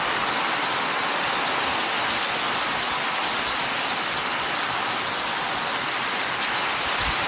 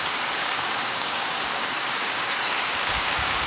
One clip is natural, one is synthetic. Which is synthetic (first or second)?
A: second